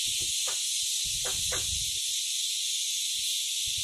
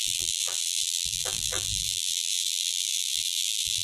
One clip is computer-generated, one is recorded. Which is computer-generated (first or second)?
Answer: second